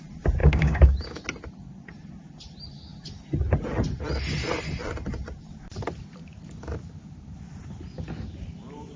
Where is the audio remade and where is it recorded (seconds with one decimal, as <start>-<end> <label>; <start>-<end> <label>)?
0.0-0.4 recorded; 0.4-1.2 remade; 1.2-9.0 recorded